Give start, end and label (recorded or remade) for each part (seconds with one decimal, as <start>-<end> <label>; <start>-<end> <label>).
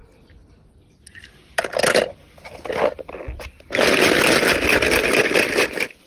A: 0.0-6.1 recorded